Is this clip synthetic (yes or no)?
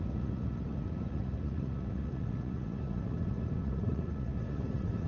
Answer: yes